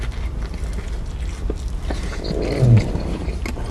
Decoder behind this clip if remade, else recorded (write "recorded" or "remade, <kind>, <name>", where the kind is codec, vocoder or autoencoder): recorded